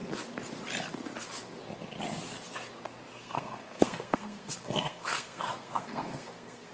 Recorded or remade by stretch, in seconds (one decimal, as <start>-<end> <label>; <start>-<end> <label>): 0.0-3.1 recorded; 3.1-6.7 remade